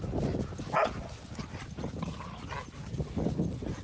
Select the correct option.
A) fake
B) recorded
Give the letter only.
B